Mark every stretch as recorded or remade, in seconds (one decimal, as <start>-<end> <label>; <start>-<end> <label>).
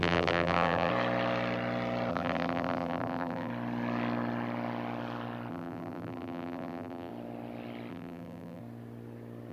0.0-0.9 remade; 0.9-2.1 recorded; 2.1-3.5 remade; 3.5-5.5 recorded; 5.5-7.1 remade; 7.1-7.9 recorded; 7.9-8.6 remade; 8.6-9.5 recorded